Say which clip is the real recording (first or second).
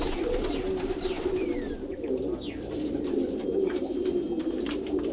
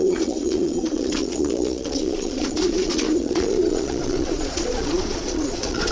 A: first